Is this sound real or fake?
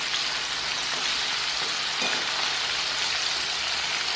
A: real